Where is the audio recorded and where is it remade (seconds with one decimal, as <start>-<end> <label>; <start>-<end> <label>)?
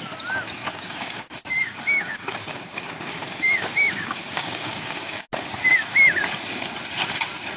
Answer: 0.0-0.6 recorded; 0.6-5.2 remade; 5.2-7.6 recorded